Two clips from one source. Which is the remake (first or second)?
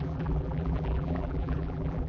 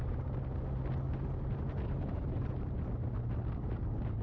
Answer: first